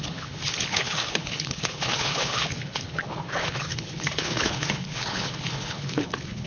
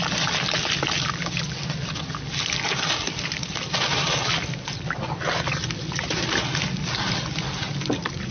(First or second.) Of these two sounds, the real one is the second